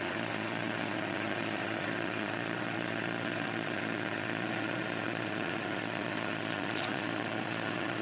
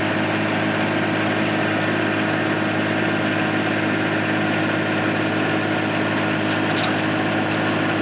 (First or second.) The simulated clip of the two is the first